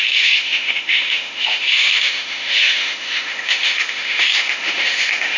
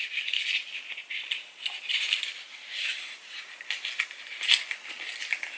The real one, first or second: second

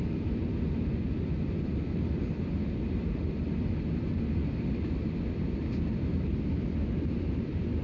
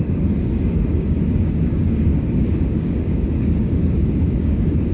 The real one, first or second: first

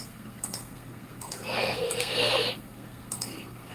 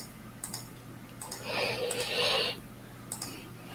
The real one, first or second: second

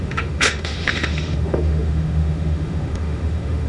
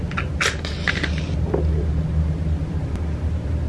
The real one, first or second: second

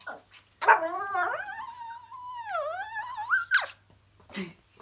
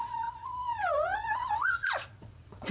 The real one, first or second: first